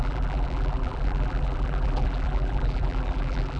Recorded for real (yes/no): no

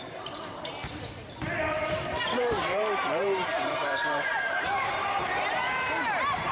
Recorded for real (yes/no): no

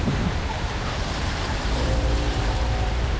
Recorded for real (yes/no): no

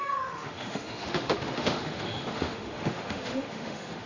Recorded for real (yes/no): no